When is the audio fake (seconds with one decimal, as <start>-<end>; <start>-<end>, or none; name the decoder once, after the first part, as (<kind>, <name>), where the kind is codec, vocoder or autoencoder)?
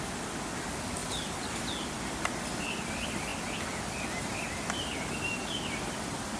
1.0-1.9 (vocoder, BigVGAN v2)